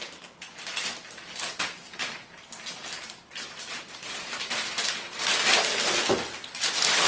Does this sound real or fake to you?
real